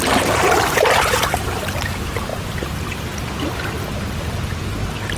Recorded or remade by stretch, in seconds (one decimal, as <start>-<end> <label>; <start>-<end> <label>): 0.0-2.3 remade; 2.3-5.2 recorded